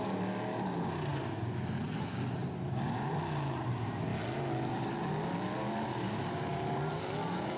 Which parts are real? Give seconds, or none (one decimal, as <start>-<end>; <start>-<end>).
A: 0.0-7.6